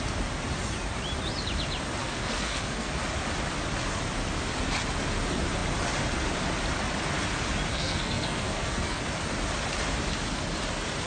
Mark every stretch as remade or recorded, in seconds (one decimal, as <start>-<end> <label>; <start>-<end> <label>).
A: 0.0-2.0 recorded; 2.0-2.9 remade; 2.9-7.7 recorded; 7.7-9.0 remade; 9.0-11.1 recorded